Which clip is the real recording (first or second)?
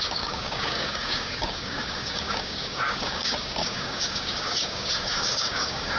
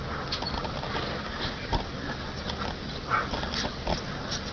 second